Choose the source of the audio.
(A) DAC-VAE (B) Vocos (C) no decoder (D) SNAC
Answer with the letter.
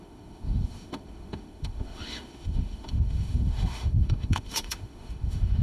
A